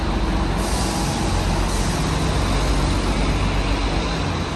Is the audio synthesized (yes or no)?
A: no